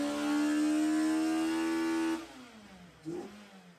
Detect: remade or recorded recorded